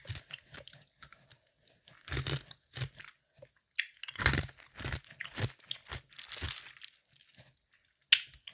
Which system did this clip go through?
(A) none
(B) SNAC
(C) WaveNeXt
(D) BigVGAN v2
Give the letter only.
A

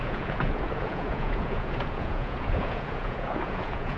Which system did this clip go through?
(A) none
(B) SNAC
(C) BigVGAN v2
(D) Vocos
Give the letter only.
D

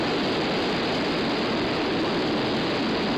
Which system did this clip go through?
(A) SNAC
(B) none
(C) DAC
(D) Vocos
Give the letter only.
B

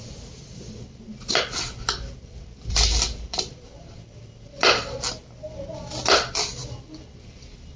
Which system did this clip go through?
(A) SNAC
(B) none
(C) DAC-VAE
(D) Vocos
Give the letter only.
B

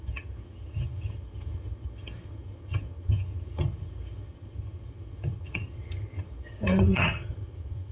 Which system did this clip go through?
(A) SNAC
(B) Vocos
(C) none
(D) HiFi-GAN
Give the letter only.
D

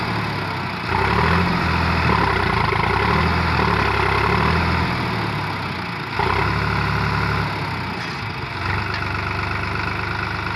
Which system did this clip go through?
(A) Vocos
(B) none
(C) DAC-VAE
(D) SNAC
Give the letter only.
B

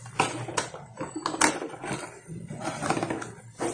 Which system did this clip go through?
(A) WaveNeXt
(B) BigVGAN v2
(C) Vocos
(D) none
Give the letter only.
D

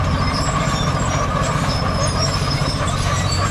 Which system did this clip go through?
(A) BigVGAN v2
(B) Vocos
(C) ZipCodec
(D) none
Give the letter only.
A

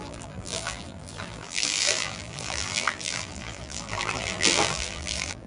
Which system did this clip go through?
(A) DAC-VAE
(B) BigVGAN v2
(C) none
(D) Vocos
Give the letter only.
B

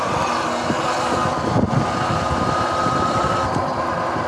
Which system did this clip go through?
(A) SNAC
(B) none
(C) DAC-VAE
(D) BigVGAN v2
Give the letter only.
B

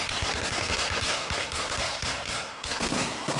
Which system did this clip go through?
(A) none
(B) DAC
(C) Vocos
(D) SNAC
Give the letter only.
D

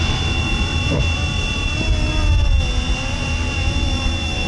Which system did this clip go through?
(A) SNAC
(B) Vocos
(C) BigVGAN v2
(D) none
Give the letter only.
D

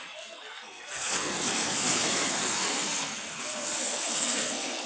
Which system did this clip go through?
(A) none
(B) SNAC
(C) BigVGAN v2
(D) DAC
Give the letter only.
B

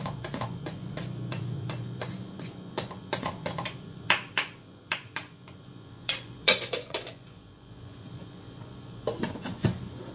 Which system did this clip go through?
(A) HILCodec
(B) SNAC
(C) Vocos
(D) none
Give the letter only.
C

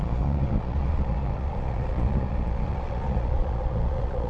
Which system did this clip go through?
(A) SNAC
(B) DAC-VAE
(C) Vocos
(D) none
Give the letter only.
C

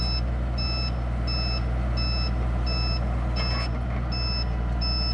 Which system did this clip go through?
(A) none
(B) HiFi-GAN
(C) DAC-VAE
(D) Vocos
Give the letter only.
A